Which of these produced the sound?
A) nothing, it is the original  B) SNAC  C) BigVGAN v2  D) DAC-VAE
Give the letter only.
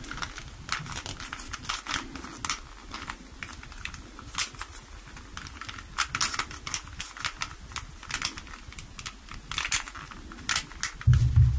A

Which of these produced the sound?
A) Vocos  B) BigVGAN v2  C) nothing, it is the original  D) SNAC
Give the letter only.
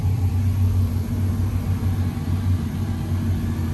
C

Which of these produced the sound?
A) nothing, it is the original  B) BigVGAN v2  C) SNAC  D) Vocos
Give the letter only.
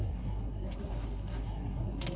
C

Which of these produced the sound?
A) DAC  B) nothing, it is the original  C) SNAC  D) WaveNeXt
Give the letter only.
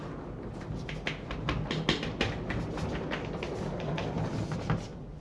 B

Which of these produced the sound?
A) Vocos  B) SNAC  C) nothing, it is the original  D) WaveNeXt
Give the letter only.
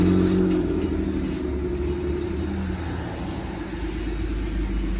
C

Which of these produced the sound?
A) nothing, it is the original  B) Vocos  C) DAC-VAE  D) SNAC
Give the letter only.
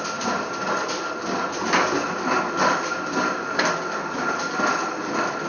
A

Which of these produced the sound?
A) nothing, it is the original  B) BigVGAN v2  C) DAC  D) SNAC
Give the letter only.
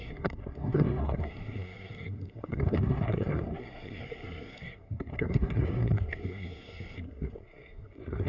D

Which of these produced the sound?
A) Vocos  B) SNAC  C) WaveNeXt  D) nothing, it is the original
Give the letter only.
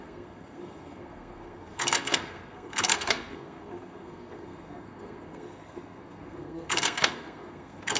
B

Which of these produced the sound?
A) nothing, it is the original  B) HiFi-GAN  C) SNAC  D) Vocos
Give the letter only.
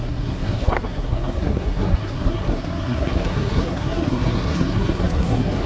C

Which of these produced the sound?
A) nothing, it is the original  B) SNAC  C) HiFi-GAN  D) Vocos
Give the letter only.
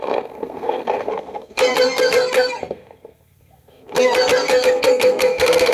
B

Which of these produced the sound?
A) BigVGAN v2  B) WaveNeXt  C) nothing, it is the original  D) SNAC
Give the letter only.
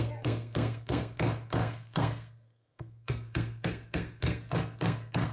D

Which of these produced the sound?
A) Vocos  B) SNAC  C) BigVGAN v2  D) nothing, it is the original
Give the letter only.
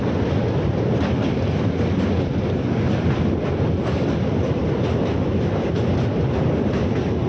D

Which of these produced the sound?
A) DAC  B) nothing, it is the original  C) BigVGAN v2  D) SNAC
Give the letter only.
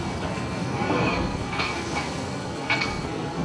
D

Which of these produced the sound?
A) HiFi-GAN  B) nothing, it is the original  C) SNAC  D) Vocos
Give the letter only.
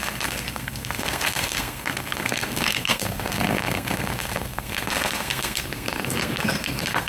C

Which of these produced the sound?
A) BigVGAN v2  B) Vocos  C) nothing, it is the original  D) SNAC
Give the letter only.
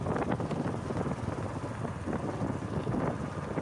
C